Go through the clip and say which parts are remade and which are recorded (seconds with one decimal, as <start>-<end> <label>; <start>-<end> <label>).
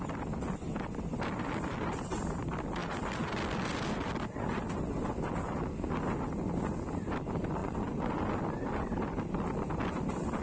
0.0-7.6 recorded; 7.6-8.2 remade; 8.2-10.4 recorded